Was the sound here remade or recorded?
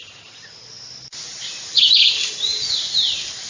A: recorded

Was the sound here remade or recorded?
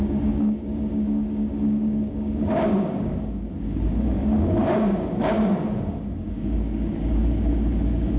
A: remade